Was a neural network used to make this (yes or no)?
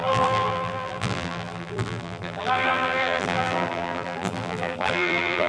yes